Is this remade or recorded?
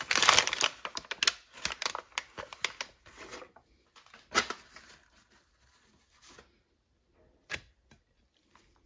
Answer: recorded